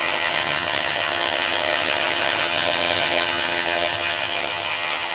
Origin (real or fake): fake